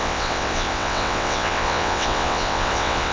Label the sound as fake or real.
fake